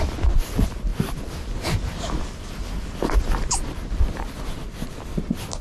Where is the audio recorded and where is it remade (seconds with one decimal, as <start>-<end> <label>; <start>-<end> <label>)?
0.0-5.6 recorded